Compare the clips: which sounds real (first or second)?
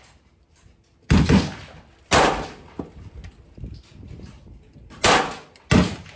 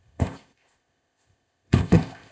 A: first